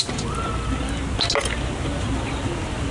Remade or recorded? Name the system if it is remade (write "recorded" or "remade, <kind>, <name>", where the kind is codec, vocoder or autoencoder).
recorded